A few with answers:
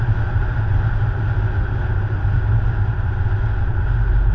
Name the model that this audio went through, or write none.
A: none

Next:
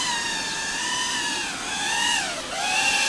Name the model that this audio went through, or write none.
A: vocoder, BigVGAN v2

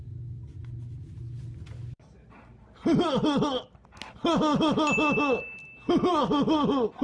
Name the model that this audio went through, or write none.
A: none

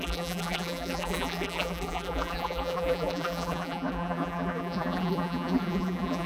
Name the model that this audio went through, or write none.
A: vocoder, BigVGAN v2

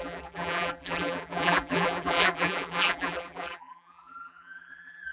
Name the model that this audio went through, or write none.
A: vocoder, BigVGAN v2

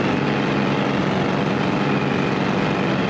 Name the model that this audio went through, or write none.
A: none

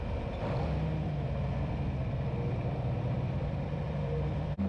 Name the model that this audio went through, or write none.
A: vocoder, BigVGAN v2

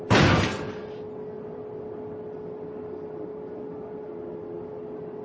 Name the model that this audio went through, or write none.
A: none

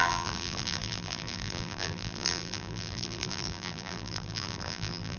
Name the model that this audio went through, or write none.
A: vocoder, BigVGAN v2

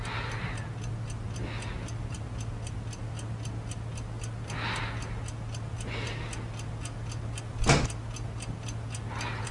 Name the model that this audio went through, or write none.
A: none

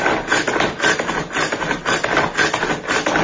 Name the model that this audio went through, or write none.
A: none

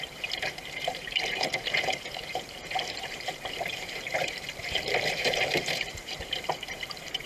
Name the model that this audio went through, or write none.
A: vocoder, BigVGAN v2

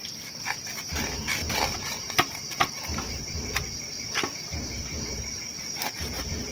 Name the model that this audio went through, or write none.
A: vocoder, BigVGAN v2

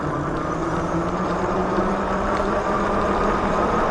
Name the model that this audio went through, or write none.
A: vocoder, BigVGAN v2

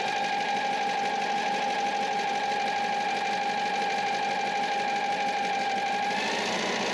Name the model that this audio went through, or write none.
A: none